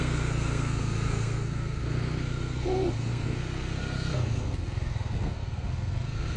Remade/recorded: remade